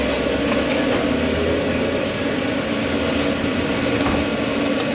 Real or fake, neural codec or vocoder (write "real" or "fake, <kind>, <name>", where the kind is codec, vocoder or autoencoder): real